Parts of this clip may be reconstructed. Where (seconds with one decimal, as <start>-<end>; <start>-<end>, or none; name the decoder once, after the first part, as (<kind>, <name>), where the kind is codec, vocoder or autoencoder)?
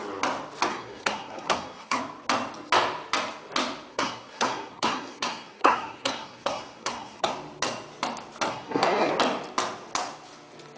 0.7-2.0 (codec, SNAC); 3.9-7.3; 8.5-9.1